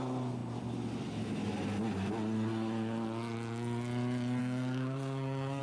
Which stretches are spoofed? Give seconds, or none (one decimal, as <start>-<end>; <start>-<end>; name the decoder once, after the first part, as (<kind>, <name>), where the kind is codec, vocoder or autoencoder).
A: 4.4-5.6 (codec, SNAC)